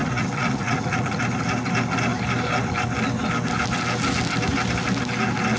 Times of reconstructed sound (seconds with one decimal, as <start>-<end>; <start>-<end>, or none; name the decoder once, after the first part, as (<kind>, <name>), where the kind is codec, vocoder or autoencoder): 0.0-1.2 (vocoder, Vocos)